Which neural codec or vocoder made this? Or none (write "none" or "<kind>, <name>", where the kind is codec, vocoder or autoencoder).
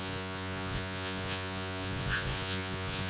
vocoder, Vocos